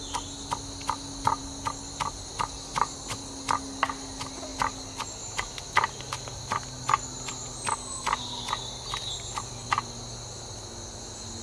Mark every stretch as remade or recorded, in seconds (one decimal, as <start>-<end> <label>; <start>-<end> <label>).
0.0-11.4 recorded